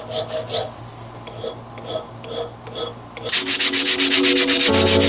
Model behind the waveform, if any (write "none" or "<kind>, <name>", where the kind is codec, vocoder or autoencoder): none